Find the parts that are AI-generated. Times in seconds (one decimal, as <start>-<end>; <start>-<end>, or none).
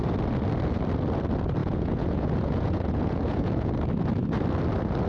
1.6-3.7